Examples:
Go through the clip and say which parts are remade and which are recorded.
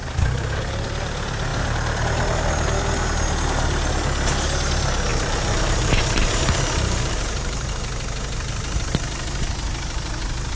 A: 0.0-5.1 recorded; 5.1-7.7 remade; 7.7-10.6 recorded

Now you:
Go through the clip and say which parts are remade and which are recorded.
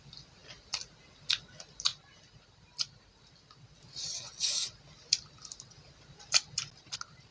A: 0.0-7.3 recorded